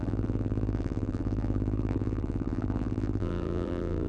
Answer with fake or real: fake